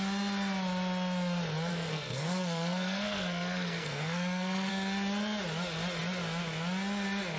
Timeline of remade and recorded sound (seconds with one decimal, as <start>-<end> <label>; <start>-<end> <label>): 0.0-1.7 recorded; 1.7-4.7 remade; 4.7-7.4 recorded

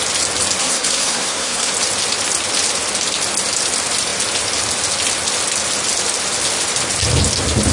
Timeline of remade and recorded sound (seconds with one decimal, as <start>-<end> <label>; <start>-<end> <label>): 0.0-0.6 recorded; 0.6-1.7 remade; 1.7-7.7 recorded

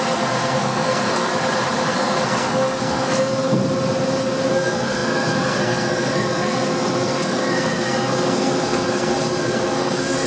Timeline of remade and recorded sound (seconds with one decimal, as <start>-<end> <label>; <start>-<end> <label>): 0.0-1.3 remade; 1.3-1.9 recorded; 1.9-3.6 remade; 3.6-4.5 recorded; 4.5-10.3 remade

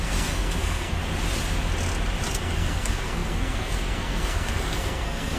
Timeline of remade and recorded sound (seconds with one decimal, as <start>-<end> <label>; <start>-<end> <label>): 0.0-1.0 remade; 1.0-2.3 recorded; 2.3-5.4 remade